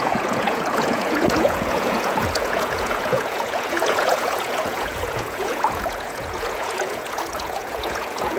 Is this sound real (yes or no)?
no